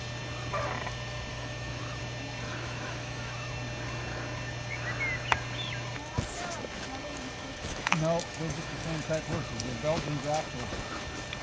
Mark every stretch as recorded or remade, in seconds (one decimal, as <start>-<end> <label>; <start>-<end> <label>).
0.0-1.3 recorded; 1.3-2.0 remade; 2.0-2.5 recorded; 2.5-3.5 remade; 3.5-7.4 recorded; 7.4-9.2 remade; 9.2-11.4 recorded